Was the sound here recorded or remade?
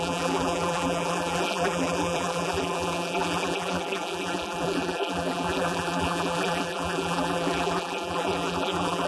remade